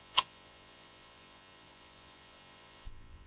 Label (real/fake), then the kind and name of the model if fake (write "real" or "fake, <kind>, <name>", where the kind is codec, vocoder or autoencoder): fake, vocoder, Vocos